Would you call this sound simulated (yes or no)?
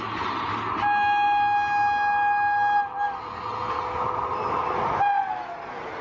no